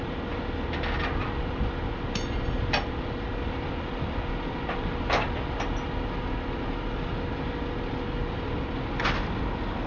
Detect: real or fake real